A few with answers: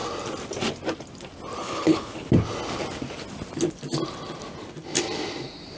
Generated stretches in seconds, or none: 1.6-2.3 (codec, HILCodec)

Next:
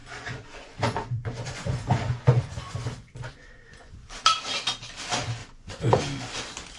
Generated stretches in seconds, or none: 0.0-4.1 (vocoder, Vocos); 5.4-6.0